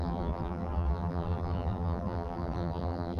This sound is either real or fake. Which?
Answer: fake